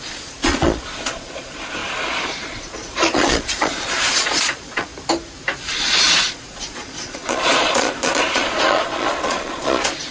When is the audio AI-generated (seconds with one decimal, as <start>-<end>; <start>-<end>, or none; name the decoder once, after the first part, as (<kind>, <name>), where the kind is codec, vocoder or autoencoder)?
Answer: 0.0-4.9 (vocoder, Vocos); 5.7-10.1